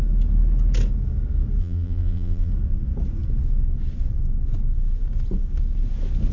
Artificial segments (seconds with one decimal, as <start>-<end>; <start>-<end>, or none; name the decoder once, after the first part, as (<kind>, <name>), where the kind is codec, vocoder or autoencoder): 1.6-2.5 (vocoder, BigVGAN v2)